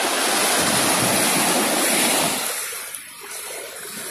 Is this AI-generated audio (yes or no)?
no